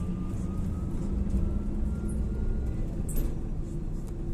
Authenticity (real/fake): real